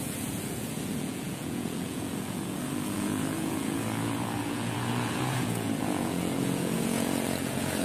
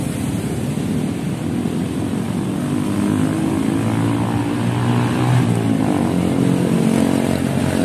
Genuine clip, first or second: second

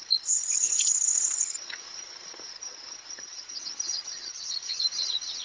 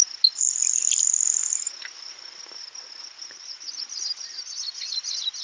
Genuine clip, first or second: second